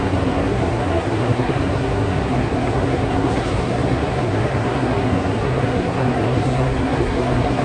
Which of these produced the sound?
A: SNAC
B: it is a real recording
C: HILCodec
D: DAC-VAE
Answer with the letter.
A